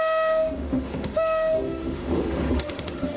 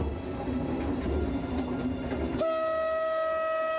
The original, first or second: second